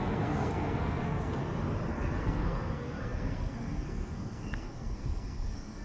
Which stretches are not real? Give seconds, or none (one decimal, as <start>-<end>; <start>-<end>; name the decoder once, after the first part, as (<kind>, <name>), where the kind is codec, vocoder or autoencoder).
0.0-1.4 (codec, SNAC); 1.9-5.8